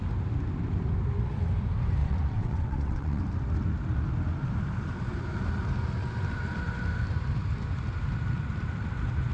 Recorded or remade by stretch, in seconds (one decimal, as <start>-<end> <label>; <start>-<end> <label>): 0.0-2.0 recorded; 2.0-3.2 remade; 3.2-9.3 recorded